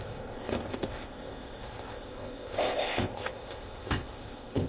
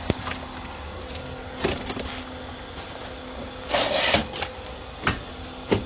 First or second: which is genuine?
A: second